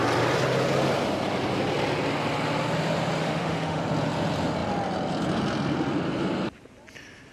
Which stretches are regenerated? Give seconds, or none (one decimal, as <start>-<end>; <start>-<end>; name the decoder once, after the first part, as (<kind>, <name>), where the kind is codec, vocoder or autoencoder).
3.2-3.8 (autoencoder, DAC-VAE)